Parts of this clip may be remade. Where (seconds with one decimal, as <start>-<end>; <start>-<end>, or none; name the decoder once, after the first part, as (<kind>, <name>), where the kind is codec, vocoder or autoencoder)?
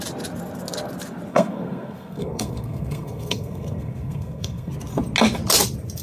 1.3-4.7 (codec, SNAC)